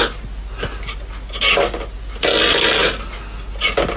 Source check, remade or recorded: recorded